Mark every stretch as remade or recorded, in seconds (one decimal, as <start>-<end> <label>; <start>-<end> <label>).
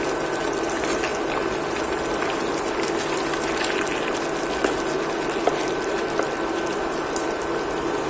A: 0.0-8.1 recorded